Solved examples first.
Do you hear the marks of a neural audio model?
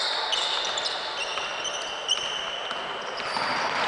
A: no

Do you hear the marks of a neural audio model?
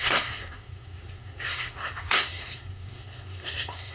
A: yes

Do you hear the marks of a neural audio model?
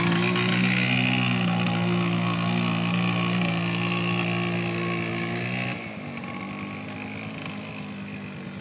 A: no